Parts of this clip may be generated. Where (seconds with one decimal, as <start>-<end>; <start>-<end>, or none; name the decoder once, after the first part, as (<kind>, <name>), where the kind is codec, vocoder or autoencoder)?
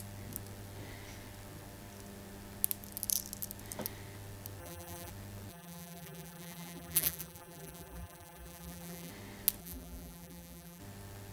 4.6-5.1 (vocoder, BigVGAN v2); 5.5-9.1; 9.6-10.8